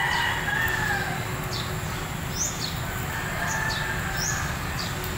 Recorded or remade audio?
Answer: recorded